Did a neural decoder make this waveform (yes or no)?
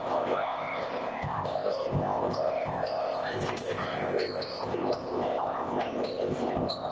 yes